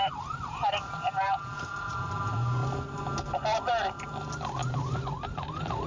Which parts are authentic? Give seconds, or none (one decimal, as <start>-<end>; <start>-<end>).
2.6-4.8